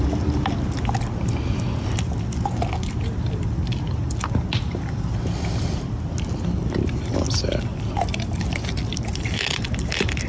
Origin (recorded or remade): recorded